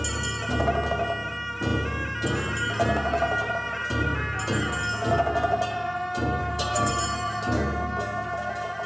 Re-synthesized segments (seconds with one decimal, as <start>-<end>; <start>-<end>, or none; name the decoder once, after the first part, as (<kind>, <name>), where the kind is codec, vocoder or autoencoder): 6.4-6.9 (codec, DAC)